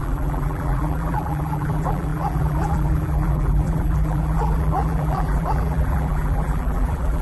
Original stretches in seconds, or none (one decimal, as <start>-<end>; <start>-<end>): none